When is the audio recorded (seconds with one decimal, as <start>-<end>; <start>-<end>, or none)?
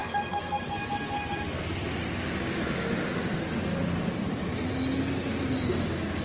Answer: 0.6-6.2